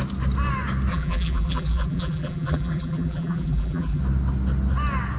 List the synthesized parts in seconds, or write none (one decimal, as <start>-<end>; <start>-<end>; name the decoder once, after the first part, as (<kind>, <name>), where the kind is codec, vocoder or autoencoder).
0.9-4.0 (vocoder, BigVGAN v2)